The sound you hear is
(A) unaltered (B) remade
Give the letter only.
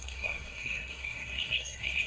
B